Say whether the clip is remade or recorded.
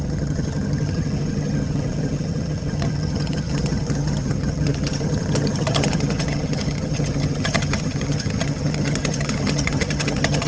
remade